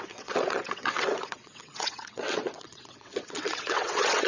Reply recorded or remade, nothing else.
remade